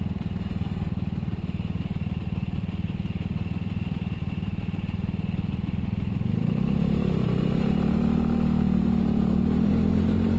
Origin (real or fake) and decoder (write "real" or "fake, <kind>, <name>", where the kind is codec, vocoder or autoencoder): fake, vocoder, BigVGAN v2